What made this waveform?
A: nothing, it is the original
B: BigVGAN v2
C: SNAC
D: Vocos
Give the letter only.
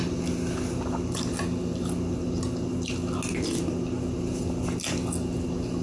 A